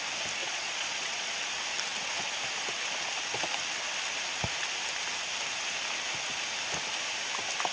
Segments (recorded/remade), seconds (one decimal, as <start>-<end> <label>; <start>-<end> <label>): 0.0-0.4 recorded; 0.4-1.3 remade; 1.3-7.7 recorded